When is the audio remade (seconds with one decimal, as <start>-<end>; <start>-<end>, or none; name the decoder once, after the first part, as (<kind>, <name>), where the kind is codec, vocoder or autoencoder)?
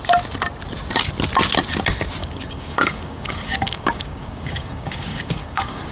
2.2-5.9 (codec, DAC)